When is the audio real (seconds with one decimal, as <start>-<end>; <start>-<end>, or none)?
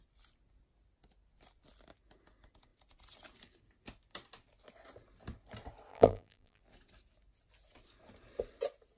0.0-5.9; 6.6-9.0